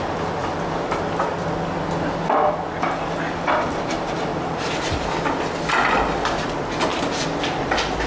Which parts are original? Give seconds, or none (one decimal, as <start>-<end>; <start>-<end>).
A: 0.0-4.3; 4.9-8.1